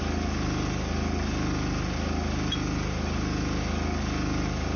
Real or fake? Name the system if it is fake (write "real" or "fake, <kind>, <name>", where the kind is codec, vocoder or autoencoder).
real